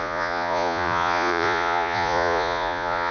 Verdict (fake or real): fake